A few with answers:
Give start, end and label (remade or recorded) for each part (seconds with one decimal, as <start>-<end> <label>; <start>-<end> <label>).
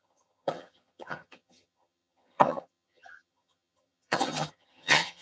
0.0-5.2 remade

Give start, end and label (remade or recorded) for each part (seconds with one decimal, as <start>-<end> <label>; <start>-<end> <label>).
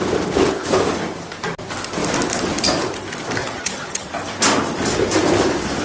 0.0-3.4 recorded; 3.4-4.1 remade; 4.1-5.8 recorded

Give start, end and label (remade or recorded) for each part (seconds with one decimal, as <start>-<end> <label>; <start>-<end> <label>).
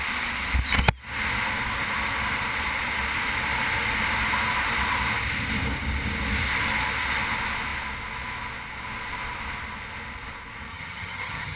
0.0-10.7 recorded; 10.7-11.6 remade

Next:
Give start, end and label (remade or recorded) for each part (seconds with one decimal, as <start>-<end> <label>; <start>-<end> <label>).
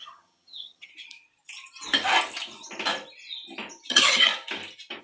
0.0-0.9 remade; 0.9-3.9 recorded; 3.9-4.3 remade; 4.3-5.0 recorded